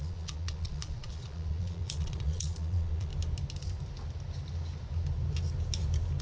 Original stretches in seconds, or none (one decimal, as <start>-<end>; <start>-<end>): 3.1-6.2